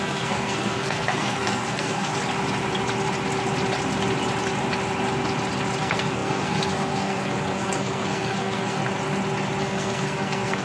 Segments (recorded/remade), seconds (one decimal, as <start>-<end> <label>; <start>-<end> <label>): 0.0-2.1 remade; 2.1-5.8 recorded; 5.8-8.8 remade; 8.8-9.6 recorded; 9.6-10.6 remade